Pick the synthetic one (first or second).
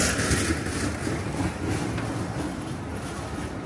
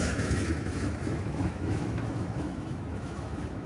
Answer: second